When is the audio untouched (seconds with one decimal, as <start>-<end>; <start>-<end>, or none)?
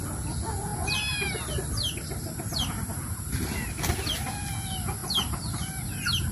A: 0.0-0.7; 3.6-5.0